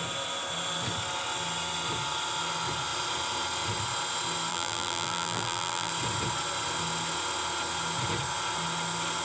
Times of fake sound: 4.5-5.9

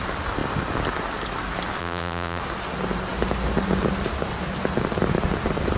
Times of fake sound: 1.8-2.4

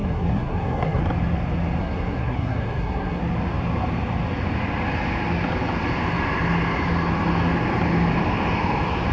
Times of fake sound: 0.0-1.0; 1.8-3.2

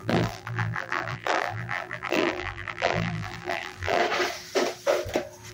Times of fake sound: 0.0-4.0

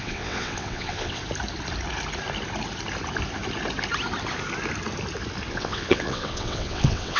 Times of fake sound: 0.0-1.2; 5.5-7.2

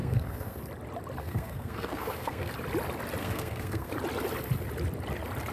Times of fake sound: 0.0-0.6; 1.2-2.5; 3.2-3.9

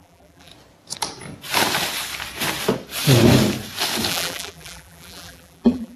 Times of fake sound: 0.0-0.5; 4.1-6.0